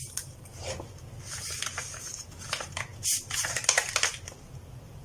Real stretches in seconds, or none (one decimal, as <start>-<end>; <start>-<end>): 0.0-5.0